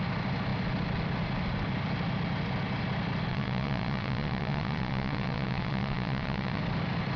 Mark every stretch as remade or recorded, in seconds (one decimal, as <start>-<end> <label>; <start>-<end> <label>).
0.0-3.3 recorded; 3.3-6.6 remade; 6.6-7.2 recorded